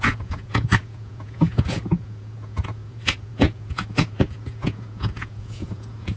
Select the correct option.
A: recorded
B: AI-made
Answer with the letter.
B